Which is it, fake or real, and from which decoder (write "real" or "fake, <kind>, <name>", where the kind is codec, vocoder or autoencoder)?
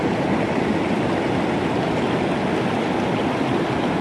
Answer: real